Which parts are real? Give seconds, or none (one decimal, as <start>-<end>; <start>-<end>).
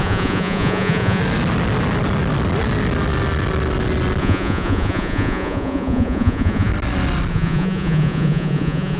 1.2-4.2; 6.7-7.3